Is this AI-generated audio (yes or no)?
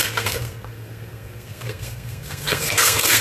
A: yes